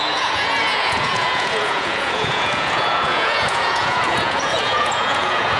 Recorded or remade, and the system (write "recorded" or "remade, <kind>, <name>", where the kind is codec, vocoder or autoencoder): remade, vocoder, Vocos